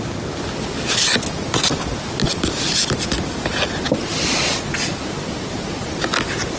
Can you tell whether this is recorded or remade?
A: recorded